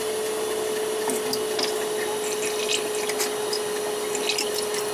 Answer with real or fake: fake